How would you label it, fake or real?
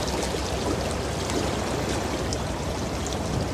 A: real